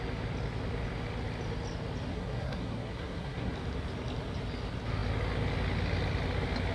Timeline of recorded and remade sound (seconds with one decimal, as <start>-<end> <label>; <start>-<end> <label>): 0.0-2.1 recorded; 2.1-3.5 remade; 3.5-6.7 recorded